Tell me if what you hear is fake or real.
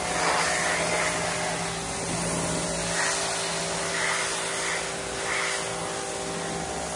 real